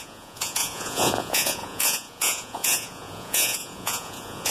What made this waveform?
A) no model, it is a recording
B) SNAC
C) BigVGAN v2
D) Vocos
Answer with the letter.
D